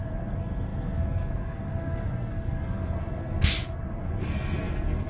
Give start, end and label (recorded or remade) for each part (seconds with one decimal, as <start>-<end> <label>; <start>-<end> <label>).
0.0-5.1 remade